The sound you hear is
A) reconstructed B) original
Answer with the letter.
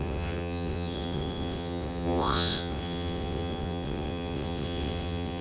A